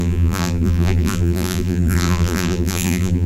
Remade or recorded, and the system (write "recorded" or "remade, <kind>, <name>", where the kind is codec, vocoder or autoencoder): remade, vocoder, BigVGAN v2